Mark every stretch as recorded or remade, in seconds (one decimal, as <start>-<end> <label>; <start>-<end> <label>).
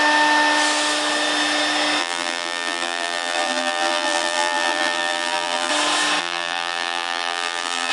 0.0-2.0 recorded; 2.0-5.7 remade; 5.7-6.2 recorded; 6.2-7.9 remade